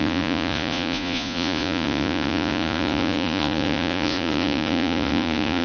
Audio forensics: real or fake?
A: fake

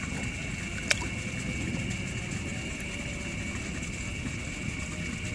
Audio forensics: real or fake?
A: real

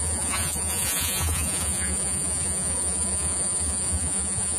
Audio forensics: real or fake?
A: fake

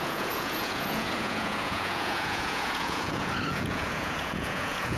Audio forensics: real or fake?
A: fake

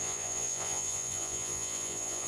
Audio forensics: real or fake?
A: fake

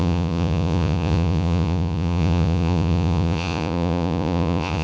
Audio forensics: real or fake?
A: fake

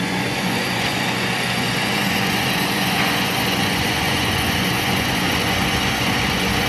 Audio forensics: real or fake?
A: fake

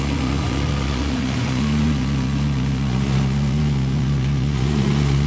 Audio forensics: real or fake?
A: fake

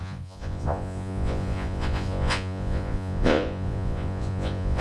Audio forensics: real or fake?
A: fake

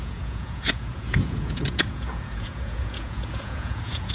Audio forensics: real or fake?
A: fake